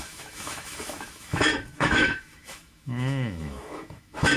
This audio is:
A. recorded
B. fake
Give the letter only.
B